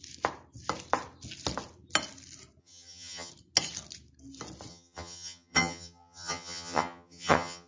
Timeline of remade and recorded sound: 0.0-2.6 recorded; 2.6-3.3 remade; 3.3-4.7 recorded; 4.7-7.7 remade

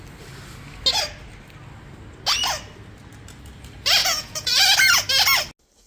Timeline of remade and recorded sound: 0.0-4.0 recorded; 4.0-4.6 remade; 4.6-5.9 recorded

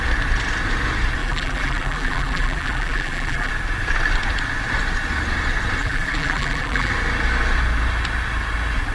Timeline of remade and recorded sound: 0.0-1.2 recorded; 1.2-3.5 remade; 3.5-5.8 recorded; 5.8-6.9 remade; 6.9-8.9 recorded

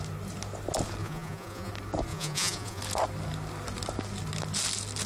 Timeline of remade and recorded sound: 0.0-1.0 recorded; 1.0-1.7 remade; 1.7-2.1 recorded; 2.1-2.8 remade; 2.8-5.1 recorded

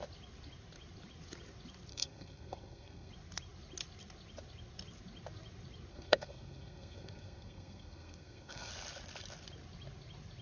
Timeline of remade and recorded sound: 0.0-1.9 recorded; 1.9-3.1 remade; 3.1-5.9 recorded; 5.9-8.7 remade; 8.7-10.4 recorded

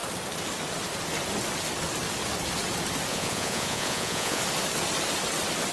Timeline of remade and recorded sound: 0.0-3.1 recorded; 3.1-4.4 remade; 4.4-5.7 recorded

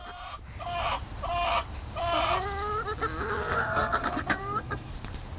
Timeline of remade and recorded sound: 0.0-3.4 recorded; 3.4-4.9 remade; 4.9-5.4 recorded